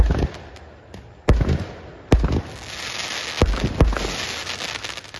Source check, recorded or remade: recorded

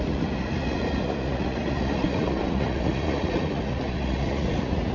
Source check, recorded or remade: remade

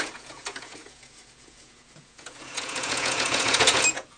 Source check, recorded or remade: remade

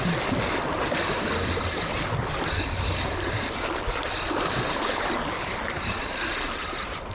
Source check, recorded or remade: recorded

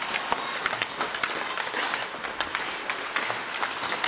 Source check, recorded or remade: recorded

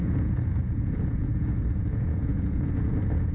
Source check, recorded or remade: remade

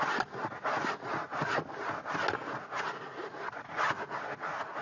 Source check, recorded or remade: recorded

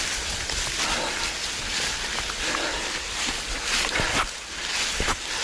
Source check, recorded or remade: recorded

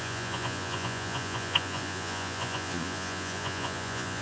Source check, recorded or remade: remade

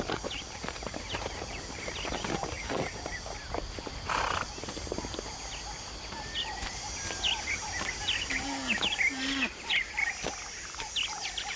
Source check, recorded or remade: recorded